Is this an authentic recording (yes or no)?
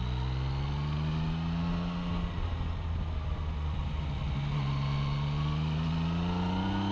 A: yes